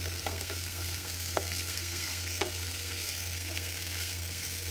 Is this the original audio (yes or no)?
no